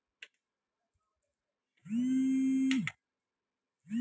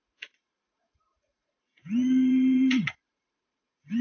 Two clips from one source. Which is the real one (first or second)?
first